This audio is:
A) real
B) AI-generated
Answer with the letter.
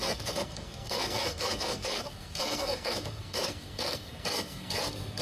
B